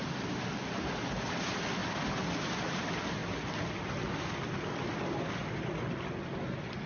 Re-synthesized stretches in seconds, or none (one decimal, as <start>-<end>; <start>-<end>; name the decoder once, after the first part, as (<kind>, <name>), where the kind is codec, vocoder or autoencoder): none